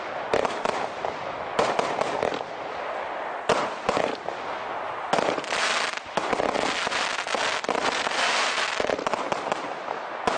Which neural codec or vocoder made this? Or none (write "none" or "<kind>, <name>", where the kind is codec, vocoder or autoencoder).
none